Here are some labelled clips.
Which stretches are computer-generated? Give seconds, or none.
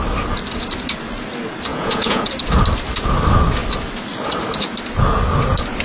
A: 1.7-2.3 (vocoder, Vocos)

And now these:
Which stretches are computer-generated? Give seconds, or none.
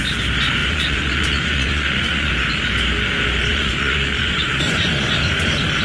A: 0.6-2.3 (vocoder, Vocos); 3.5-5.1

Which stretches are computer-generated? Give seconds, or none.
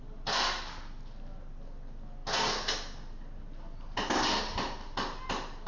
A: none